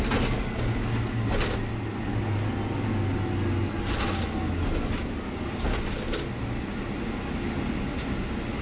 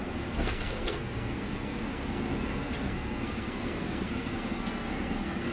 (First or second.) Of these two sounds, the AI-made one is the second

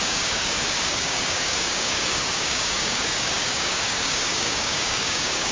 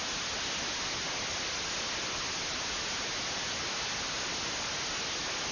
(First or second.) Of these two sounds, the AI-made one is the first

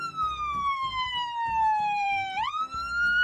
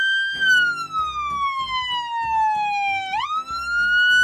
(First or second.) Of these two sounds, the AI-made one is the first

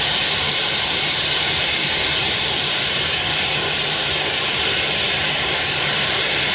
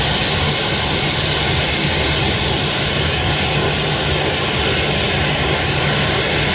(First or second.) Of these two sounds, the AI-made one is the first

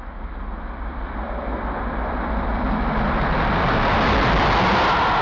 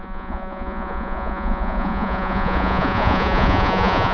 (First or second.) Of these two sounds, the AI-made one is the second